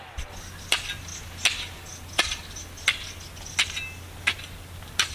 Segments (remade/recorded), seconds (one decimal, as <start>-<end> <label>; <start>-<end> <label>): 0.0-5.1 recorded